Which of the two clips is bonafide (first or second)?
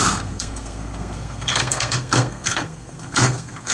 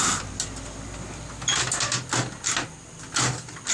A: second